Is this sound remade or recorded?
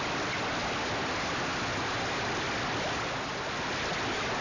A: recorded